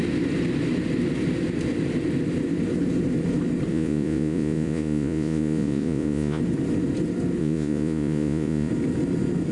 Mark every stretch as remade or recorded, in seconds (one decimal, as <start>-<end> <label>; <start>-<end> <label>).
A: 0.0-3.7 recorded; 3.7-6.4 remade; 6.4-7.4 recorded; 7.4-8.7 remade; 8.7-9.5 recorded